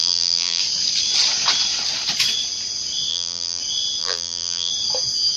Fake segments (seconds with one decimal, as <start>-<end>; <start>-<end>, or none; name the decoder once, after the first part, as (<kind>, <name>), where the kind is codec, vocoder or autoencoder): 0.0-0.6 (vocoder, BigVGAN v2); 3.1-3.6; 4.0-4.7